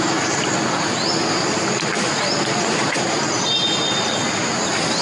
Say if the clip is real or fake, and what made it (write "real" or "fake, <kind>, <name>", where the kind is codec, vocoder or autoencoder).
real